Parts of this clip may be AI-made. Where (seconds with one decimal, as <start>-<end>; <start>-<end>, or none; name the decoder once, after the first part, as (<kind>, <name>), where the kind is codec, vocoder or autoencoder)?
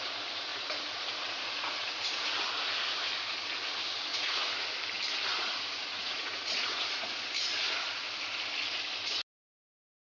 0.5-2.2 (vocoder, Vocos); 4.1-4.6; 5.3-7.2